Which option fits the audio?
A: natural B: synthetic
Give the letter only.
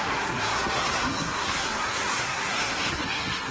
B